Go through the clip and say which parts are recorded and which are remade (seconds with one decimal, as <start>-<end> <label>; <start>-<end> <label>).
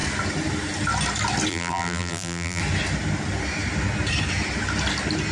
0.0-1.5 recorded; 1.5-2.6 remade; 2.6-5.3 recorded